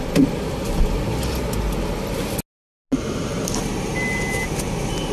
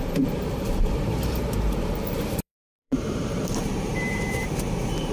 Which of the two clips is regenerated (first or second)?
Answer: second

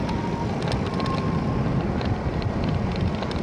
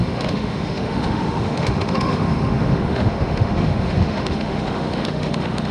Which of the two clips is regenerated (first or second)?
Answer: second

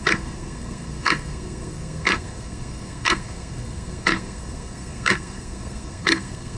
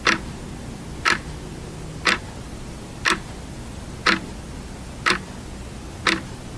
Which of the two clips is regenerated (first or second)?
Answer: first